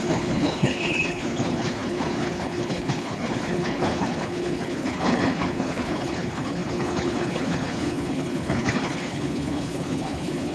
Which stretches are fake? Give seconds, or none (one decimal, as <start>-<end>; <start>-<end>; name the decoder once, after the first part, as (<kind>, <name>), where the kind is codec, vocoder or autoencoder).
0.0-10.5 (codec, HILCodec)